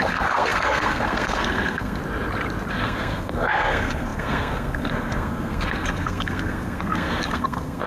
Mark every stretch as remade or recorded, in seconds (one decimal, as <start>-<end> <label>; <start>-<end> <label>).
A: 0.0-2.0 remade; 2.0-2.7 recorded; 2.7-7.9 remade